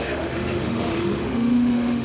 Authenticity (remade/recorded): remade